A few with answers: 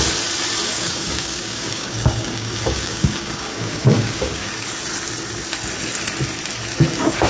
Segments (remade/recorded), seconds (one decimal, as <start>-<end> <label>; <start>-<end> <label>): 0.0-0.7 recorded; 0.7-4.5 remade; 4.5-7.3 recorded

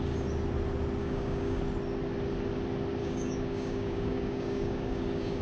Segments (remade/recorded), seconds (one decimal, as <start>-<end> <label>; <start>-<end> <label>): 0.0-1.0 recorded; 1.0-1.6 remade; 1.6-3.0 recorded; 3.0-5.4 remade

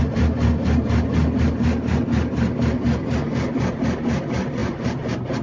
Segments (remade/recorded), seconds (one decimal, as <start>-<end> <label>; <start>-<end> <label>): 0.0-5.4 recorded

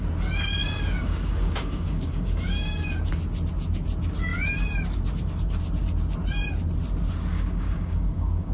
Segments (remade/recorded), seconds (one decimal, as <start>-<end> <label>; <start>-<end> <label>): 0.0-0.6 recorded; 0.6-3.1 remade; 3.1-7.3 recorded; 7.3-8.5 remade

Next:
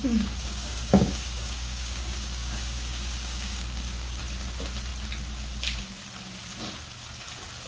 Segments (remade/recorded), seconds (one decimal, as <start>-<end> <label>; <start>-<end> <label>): 0.0-4.2 remade; 4.2-7.7 recorded